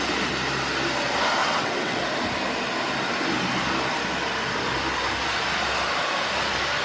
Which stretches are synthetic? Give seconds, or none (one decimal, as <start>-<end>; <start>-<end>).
1.4-2.0